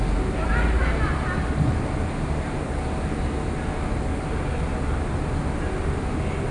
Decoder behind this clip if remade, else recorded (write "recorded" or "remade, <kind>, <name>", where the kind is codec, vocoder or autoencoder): recorded